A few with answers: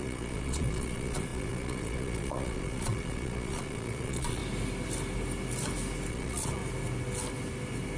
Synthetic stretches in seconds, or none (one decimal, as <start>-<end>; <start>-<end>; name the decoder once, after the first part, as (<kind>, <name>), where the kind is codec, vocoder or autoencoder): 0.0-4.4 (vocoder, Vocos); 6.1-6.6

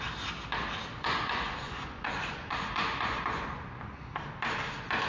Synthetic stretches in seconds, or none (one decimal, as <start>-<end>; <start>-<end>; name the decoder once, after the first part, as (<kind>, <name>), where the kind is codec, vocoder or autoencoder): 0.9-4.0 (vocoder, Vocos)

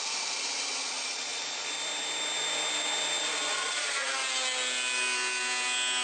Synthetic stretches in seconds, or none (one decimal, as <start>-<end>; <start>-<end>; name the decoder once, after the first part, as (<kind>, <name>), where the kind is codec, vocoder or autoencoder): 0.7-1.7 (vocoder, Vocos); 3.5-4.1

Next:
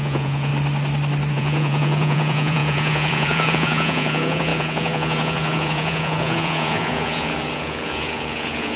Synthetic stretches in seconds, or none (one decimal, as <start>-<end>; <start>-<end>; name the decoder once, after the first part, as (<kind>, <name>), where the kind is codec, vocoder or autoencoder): 0.0-0.5 (vocoder, Vocos); 1.3-8.8

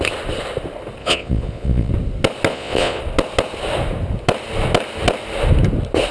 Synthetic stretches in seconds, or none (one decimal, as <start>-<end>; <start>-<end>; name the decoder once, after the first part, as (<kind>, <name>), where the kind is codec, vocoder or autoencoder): 1.0-1.9 (vocoder, Vocos); 2.5-3.0

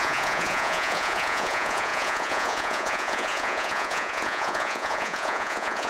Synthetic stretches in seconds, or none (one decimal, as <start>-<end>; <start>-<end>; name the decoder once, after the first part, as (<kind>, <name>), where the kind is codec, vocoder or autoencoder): 0.0-5.9 (vocoder, Vocos)